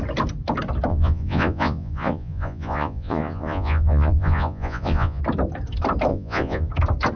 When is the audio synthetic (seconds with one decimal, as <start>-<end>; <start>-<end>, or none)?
0.9-5.2; 6.1-6.7